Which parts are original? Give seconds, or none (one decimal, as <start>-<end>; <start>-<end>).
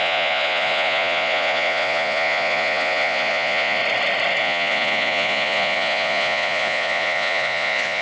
3.8-4.4